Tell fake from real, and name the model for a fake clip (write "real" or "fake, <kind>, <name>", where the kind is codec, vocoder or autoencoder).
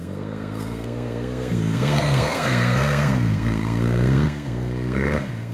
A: fake, codec, SNAC